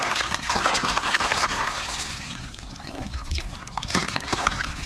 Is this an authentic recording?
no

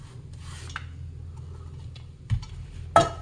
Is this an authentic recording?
yes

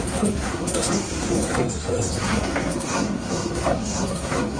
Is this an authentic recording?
no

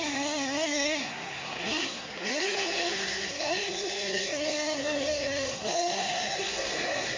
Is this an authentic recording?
no